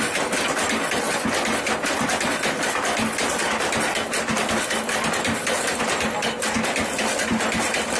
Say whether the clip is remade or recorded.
recorded